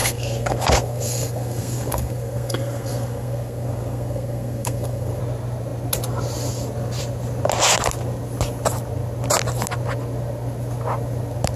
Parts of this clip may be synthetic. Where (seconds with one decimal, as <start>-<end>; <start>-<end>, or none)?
0.0-5.2